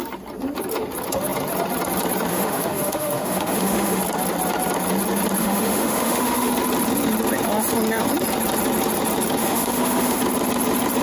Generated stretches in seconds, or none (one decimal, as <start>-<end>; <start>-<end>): 2.3-4.0; 5.4-6.5; 9.4-10.2